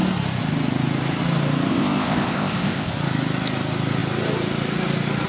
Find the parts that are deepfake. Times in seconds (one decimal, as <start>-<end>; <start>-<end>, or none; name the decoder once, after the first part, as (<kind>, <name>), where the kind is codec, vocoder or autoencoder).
1.7-2.9 (codec, ZipCodec)